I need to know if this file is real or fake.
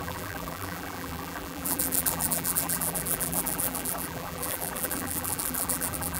fake